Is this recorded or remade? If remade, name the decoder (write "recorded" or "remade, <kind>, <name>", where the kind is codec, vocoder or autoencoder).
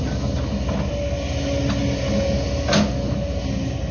recorded